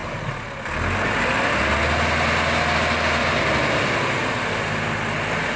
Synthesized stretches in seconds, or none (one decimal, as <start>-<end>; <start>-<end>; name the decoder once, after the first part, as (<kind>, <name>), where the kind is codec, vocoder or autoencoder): 3.2-3.8 (vocoder, BigVGAN v2)